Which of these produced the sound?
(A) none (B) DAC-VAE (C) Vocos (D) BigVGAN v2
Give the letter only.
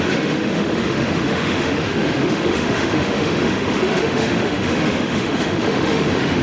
B